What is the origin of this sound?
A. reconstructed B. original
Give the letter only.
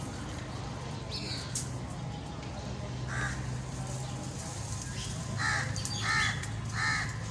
B